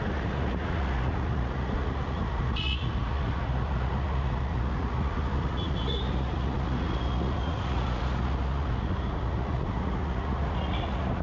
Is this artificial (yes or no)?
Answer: yes